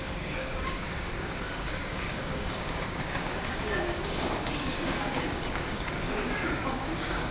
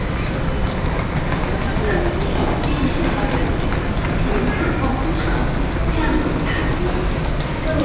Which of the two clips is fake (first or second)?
first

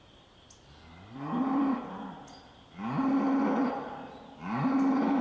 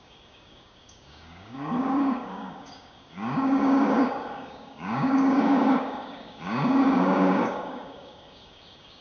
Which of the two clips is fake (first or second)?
second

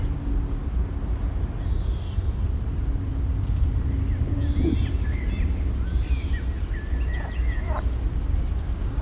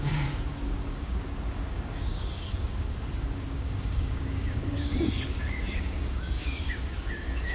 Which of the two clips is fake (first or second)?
second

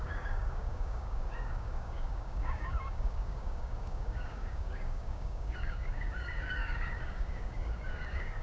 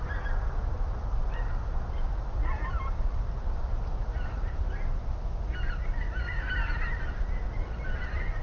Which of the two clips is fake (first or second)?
first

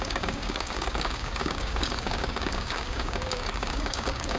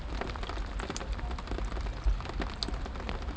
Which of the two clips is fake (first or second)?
first